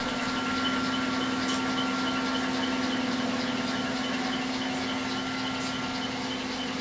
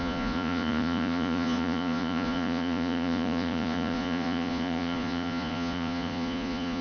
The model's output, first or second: second